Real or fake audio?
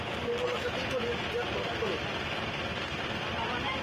real